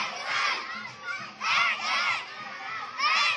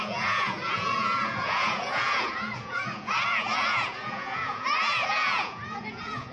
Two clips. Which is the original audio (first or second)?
first